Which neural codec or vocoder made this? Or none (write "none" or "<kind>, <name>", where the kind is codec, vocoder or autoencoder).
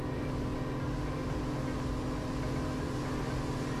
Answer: none